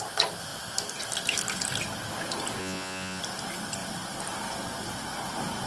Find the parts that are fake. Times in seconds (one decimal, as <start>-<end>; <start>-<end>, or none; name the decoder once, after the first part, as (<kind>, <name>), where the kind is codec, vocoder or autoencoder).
2.6-3.2 (vocoder, Vocos)